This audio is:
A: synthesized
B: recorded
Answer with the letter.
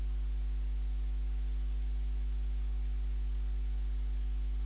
B